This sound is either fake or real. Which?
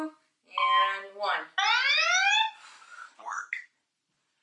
real